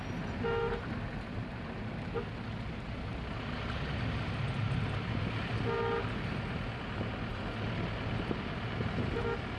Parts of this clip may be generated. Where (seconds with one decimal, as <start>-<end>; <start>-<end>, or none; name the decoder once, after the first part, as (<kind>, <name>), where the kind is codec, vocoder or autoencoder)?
none